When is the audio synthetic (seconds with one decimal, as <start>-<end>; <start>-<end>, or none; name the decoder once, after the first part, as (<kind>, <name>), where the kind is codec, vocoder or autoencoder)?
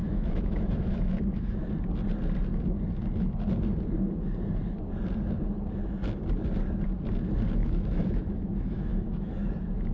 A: 0.0-1.7 (autoencoder, DAC-VAE); 7.6-9.5